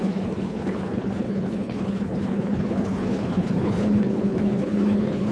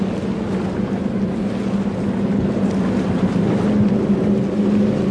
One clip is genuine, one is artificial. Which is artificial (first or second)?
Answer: first